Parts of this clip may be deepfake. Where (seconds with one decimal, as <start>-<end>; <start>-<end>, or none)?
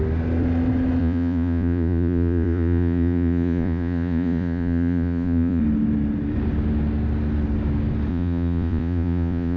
1.0-5.6; 8.1-9.6